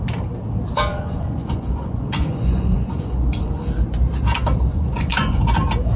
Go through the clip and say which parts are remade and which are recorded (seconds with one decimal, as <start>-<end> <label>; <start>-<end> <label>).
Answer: 0.0-0.9 recorded; 0.9-3.5 remade; 3.5-4.7 recorded; 4.7-5.4 remade; 5.4-6.0 recorded